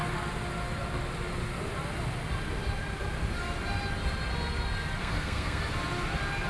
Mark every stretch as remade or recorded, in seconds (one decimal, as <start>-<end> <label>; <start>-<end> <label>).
0.0-5.0 recorded; 5.0-5.6 remade; 5.6-6.5 recorded